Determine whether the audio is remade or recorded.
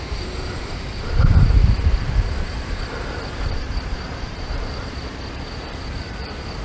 remade